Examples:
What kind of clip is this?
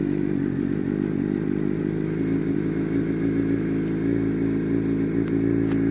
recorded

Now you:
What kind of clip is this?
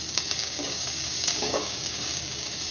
remade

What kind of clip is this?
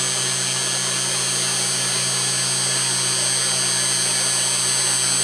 recorded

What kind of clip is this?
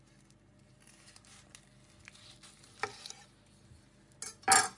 recorded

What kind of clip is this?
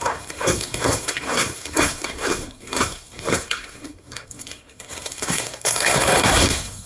remade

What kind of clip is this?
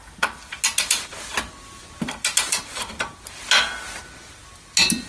recorded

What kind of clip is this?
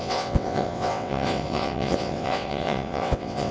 remade